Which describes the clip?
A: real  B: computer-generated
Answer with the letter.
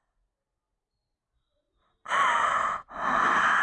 A